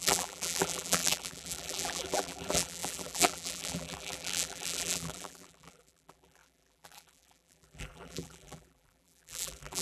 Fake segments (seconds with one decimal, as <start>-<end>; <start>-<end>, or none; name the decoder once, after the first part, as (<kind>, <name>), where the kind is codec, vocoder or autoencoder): 0.0-9.8 (vocoder, BigVGAN v2)